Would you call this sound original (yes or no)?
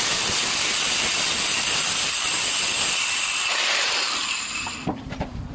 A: yes